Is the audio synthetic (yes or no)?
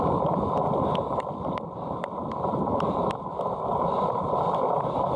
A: no